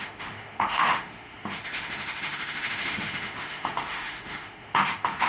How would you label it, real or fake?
fake